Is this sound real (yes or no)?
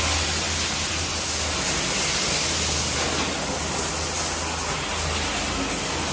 yes